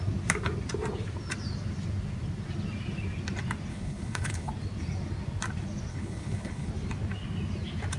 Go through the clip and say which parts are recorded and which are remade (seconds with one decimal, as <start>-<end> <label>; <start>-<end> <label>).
0.0-3.7 recorded; 3.7-4.5 remade; 4.5-5.9 recorded; 5.9-6.7 remade; 6.7-8.0 recorded